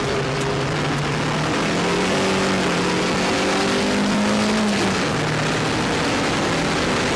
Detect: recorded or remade recorded